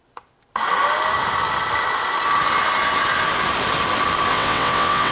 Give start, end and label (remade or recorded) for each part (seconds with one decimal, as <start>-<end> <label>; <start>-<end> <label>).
0.0-4.3 recorded; 4.3-5.1 remade